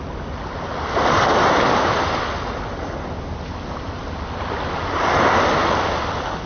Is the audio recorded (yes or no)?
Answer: yes